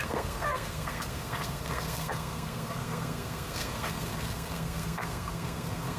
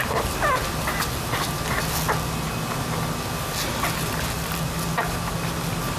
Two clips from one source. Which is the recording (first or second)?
second